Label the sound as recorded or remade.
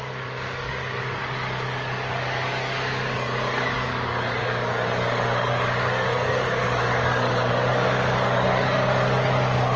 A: remade